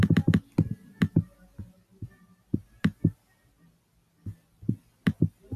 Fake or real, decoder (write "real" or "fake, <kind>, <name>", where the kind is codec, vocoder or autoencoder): real